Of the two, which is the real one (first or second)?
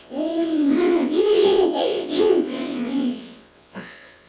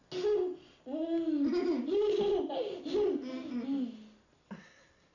second